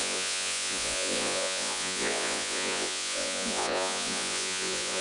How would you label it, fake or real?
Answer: fake